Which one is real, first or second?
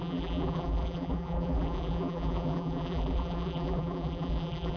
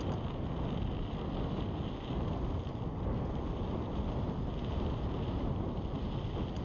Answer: second